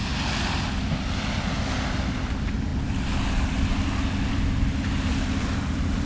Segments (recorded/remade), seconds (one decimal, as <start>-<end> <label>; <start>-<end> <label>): 0.0-6.1 recorded